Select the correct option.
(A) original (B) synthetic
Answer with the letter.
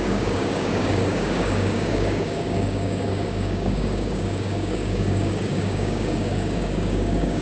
B